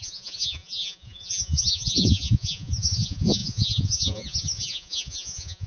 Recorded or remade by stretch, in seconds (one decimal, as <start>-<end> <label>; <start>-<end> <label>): 0.0-5.7 remade